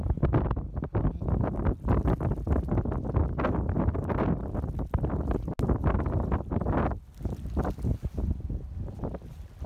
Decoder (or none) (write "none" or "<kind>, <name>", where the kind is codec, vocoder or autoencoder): none